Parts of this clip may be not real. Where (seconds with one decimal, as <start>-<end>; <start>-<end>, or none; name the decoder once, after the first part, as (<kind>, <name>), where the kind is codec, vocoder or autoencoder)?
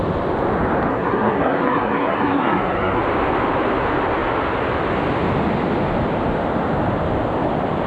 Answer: 0.9-3.0 (codec, SNAC)